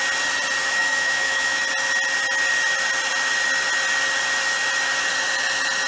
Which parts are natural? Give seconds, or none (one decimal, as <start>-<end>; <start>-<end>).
0.0-0.6; 1.6-5.9